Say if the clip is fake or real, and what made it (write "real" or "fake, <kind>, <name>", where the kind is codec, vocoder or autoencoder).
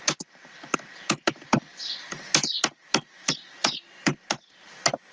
real